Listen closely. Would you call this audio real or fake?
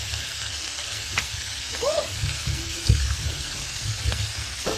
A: fake